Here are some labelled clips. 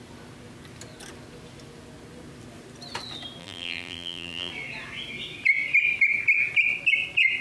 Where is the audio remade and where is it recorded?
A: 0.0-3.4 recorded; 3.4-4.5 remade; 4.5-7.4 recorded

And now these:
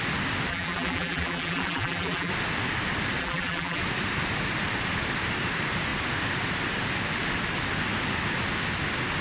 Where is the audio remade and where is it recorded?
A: 0.0-0.5 recorded; 0.5-2.3 remade; 2.3-3.2 recorded; 3.2-3.8 remade; 3.8-9.2 recorded

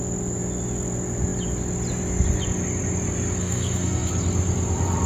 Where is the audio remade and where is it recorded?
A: 0.0-3.4 recorded; 3.4-4.1 remade; 4.1-5.1 recorded

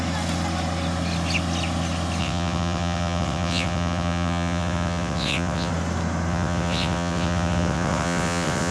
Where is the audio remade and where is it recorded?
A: 0.0-2.2 recorded; 2.2-5.7 remade; 5.7-6.3 recorded; 6.3-8.7 remade

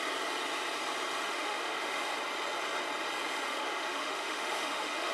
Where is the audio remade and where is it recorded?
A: 0.0-1.2 recorded; 1.2-2.0 remade; 2.0-3.5 recorded; 3.5-5.1 remade

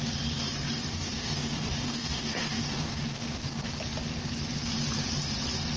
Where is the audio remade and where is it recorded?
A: 0.0-0.9 recorded; 0.9-3.7 remade; 3.7-5.8 recorded

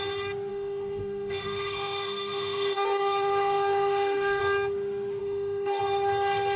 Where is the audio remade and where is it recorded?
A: 0.0-0.5 recorded; 0.5-4.4 remade; 4.4-5.2 recorded; 5.2-5.8 remade; 5.8-6.6 recorded

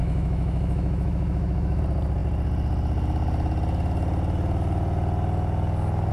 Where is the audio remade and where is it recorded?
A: 0.0-1.8 remade; 1.8-6.1 recorded